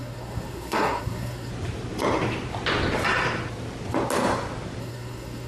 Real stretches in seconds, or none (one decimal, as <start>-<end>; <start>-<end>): 1.5-4.8